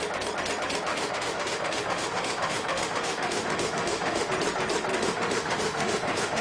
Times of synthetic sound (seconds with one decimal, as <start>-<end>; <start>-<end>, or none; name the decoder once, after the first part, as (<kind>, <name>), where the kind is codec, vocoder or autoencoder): 0.9-4.3 (autoencoder, DAC-VAE); 4.9-6.4